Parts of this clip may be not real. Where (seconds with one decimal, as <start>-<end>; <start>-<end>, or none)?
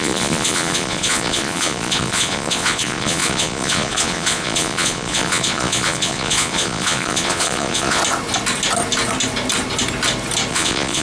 0.0-8.0; 10.5-11.0